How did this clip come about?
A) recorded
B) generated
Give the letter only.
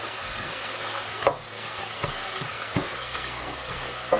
B